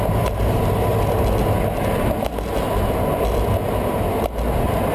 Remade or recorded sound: recorded